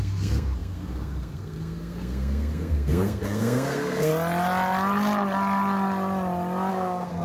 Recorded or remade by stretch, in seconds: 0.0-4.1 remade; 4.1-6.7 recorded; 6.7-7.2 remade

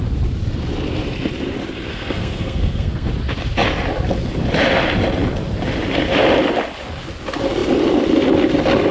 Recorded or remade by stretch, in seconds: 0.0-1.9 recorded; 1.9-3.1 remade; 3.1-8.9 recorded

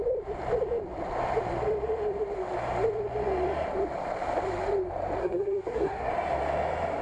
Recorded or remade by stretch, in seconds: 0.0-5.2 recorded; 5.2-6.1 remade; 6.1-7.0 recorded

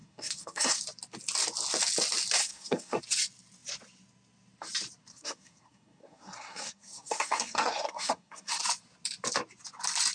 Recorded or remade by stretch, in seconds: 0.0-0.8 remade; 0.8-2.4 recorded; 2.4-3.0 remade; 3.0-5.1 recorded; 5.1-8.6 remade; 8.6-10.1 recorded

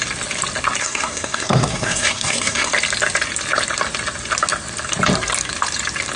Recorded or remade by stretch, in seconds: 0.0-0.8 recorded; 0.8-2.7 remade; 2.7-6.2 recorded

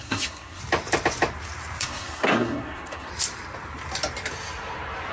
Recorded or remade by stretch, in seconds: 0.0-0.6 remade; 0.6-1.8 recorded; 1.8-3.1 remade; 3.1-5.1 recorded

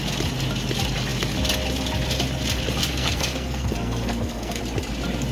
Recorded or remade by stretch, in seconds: 0.0-2.8 recorded; 2.8-4.6 remade; 4.6-5.3 recorded